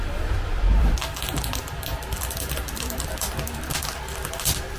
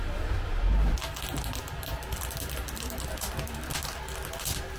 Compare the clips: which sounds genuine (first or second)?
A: second